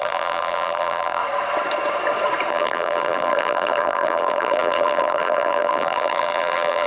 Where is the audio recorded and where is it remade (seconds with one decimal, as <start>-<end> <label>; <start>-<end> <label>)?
0.0-1.2 remade; 1.2-2.5 recorded; 2.5-6.9 remade